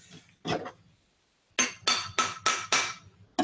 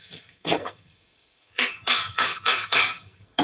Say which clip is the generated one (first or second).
second